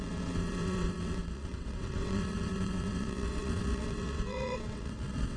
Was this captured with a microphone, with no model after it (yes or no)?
no